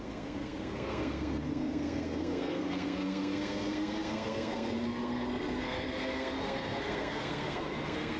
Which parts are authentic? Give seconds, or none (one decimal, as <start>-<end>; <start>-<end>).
none